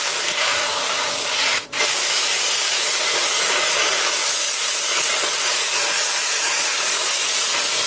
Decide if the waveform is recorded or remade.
remade